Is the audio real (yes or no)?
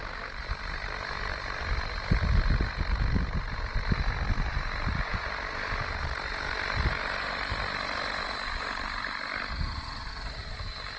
yes